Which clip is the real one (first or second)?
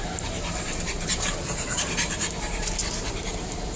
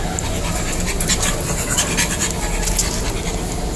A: second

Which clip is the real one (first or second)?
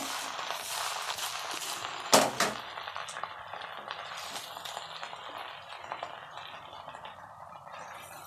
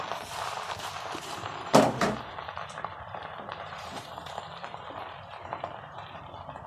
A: first